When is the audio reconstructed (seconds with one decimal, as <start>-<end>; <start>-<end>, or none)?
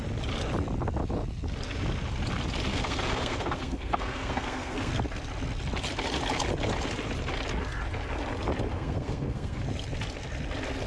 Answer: 2.7-4.9; 8.7-9.6